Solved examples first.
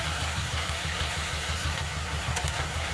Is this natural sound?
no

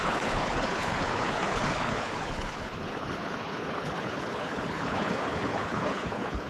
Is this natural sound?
no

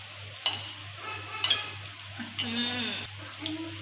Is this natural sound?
yes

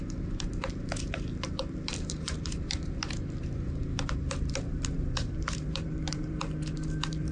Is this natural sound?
no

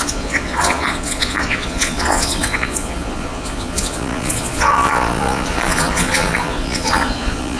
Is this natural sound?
no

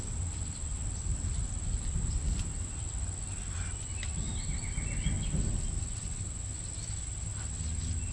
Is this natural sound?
yes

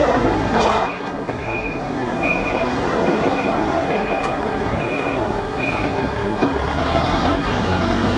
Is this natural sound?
no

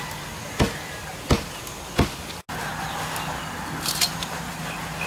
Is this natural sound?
yes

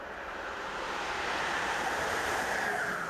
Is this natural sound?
no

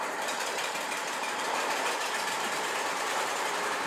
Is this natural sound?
no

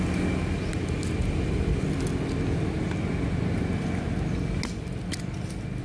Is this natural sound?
yes